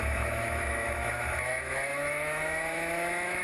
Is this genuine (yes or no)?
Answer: no